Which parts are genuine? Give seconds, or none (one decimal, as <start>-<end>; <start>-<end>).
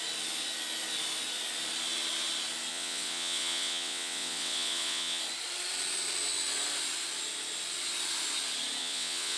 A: 0.0-2.7; 5.2-8.8